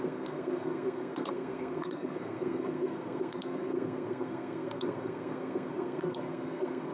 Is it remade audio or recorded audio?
remade